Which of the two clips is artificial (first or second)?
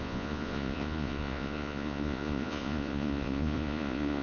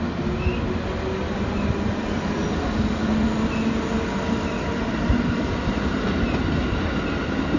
first